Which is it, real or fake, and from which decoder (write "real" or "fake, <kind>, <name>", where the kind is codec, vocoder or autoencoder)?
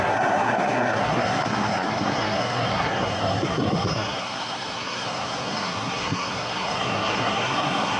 fake, codec, SNAC